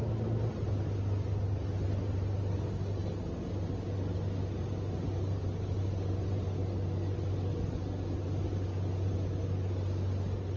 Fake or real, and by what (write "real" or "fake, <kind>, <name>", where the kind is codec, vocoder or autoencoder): real